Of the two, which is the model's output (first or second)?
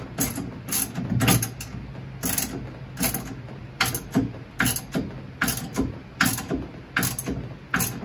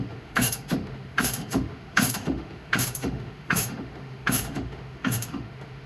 second